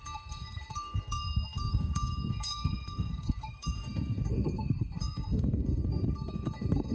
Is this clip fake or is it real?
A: fake